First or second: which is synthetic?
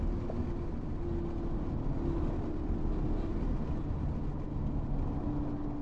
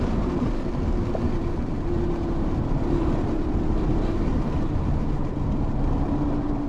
second